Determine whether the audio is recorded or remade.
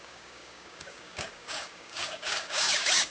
remade